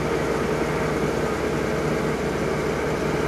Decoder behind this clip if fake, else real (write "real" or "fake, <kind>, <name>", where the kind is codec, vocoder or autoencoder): real